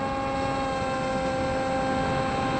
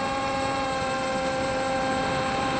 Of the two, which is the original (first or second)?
first